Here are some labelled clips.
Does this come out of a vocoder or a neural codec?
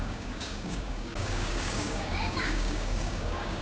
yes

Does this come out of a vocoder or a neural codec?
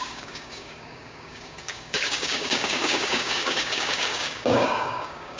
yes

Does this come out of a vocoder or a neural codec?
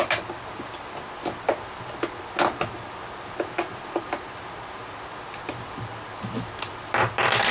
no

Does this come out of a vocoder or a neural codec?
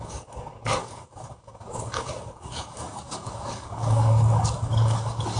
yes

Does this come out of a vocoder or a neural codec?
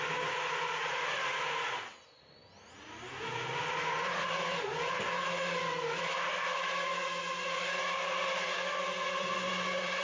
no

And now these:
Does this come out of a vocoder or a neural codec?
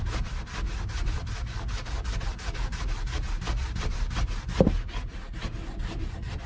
no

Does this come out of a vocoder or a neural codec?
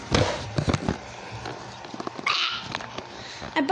no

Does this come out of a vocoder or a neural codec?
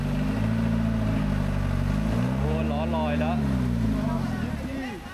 no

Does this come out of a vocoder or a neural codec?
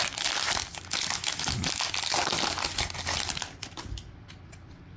no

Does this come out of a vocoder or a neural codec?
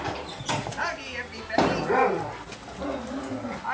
no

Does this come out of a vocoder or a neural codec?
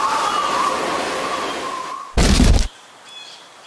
no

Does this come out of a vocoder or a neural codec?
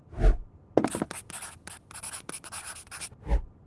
no